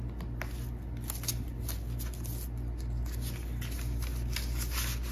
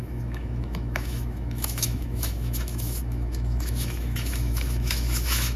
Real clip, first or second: first